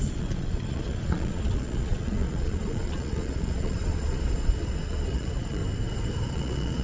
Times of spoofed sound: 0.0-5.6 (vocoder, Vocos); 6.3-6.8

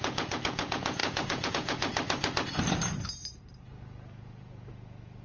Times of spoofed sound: 0.0-1.9 (vocoder, Vocos); 3.7-5.2

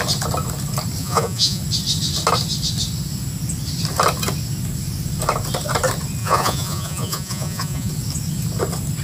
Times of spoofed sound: 1.0-1.6 (vocoder, Vocos); 6.2-7.9

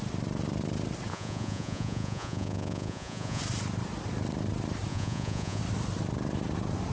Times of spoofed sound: 1.1-3.4 (vocoder, Vocos); 4.9-5.6

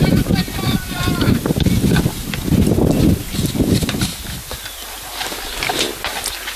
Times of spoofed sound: none

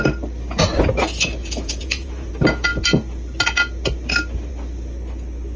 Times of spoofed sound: 1.4-2.3 (vocoder, Vocos)

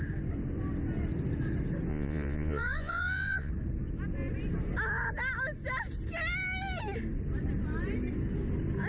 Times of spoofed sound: 1.9-3.5 (vocoder, Vocos)

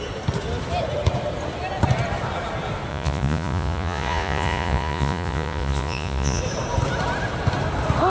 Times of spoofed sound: 2.9-6.4 (vocoder, Vocos)